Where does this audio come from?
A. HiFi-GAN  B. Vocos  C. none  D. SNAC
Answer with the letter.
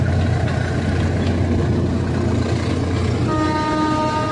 C